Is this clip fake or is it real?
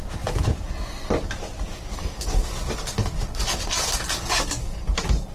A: real